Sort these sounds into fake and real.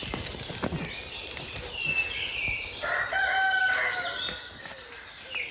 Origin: real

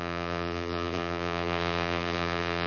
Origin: fake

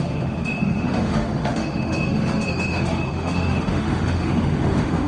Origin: fake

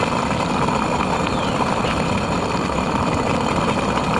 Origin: real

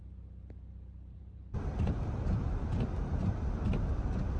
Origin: fake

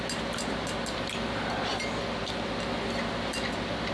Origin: real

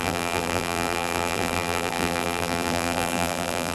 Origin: fake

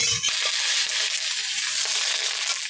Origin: real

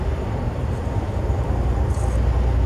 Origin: real